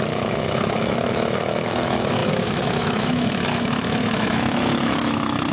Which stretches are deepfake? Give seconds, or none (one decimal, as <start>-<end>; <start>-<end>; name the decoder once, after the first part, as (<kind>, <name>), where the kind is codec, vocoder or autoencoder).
0.0-5.5 (autoencoder, DAC-VAE)